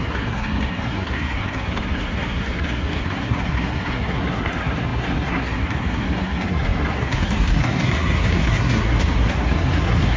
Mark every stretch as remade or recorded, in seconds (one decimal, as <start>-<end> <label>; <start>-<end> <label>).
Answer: 0.0-10.2 remade